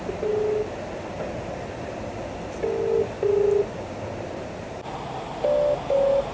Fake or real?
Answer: real